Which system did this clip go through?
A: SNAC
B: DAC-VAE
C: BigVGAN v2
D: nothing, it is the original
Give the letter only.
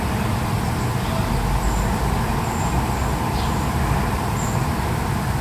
D